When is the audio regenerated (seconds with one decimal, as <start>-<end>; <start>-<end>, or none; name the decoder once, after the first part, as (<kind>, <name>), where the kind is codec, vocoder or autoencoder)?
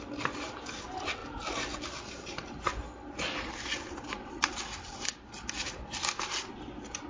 none